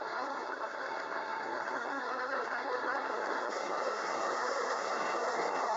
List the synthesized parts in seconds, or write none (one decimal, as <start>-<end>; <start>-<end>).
0.0-5.8

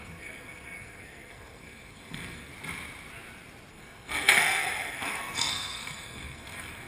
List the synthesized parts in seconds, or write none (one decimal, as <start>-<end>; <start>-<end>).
0.0-2.5; 3.7-6.9

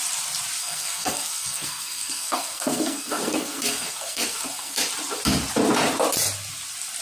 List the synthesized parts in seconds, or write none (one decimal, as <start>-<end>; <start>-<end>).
0.6-4.8

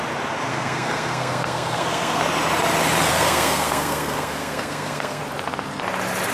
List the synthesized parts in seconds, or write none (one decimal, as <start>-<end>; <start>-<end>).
0.5-2.2; 3.1-5.2

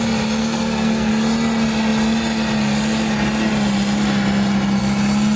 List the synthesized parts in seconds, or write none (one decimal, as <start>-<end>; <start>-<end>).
0.4-1.1

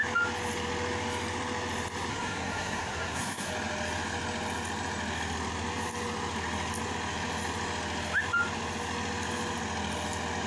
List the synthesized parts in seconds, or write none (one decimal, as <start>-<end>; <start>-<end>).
2.1-3.5

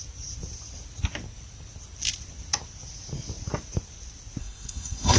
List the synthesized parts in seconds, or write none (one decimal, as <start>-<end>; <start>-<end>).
4.4-5.2